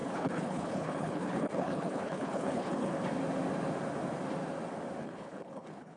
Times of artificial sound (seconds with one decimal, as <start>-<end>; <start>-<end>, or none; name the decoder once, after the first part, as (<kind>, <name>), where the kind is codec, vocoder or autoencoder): 0.0-2.9 (codec, HILCodec); 5.0-6.0